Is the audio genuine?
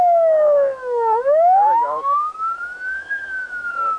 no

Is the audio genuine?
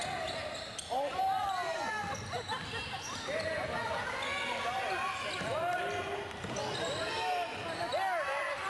yes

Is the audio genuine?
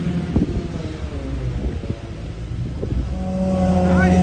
yes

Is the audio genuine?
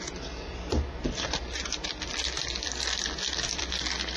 yes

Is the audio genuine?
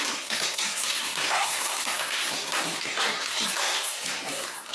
no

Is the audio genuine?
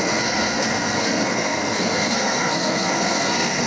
no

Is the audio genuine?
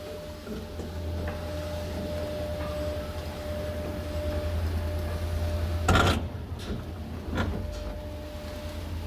yes